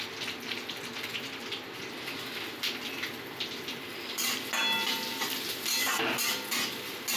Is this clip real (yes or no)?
yes